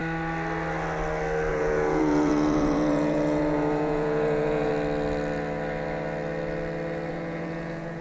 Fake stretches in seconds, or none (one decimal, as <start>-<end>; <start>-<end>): 1.5-4.7; 7.1-8.0

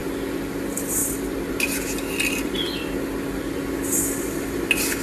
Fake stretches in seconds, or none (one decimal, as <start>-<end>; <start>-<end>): none

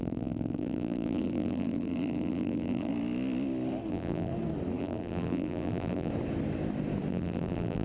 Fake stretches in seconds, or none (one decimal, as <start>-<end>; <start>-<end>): 0.0-2.9; 3.9-4.3; 4.8-6.1; 7.1-7.8

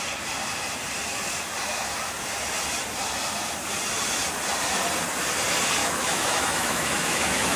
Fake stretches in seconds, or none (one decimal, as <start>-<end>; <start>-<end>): 5.8-7.6